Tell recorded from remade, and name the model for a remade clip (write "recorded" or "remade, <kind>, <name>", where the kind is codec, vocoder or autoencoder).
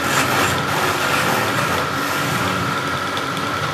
remade, vocoder, BigVGAN v2